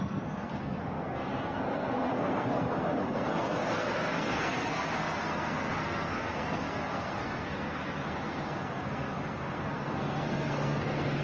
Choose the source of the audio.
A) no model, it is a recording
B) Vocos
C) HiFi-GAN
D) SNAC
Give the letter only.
D